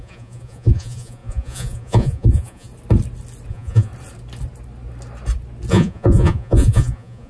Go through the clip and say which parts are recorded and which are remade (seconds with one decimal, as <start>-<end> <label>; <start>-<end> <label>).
0.0-2.7 remade; 2.7-3.5 recorded; 3.5-3.9 remade; 3.9-5.7 recorded; 5.7-7.3 remade